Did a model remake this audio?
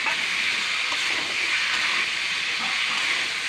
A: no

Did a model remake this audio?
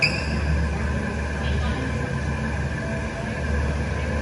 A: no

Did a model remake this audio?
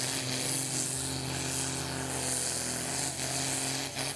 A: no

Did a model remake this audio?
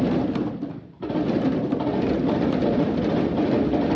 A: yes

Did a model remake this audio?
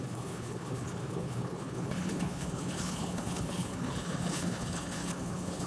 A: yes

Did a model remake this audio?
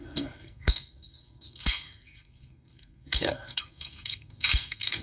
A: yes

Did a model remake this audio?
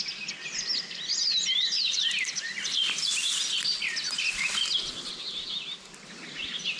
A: no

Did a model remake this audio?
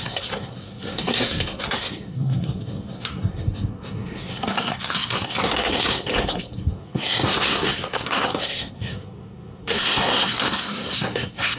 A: yes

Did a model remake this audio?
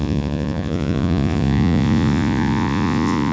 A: yes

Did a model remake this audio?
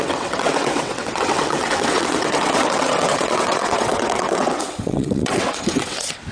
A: yes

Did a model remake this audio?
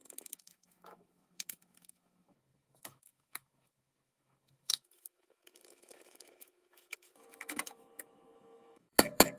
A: yes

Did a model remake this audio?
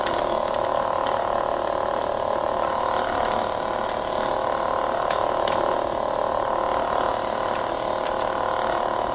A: no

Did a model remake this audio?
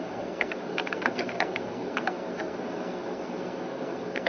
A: yes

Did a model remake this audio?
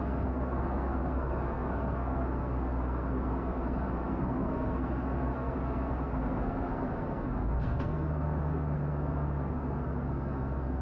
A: yes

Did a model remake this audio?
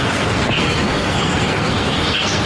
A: yes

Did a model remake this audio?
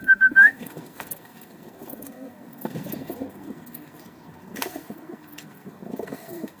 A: yes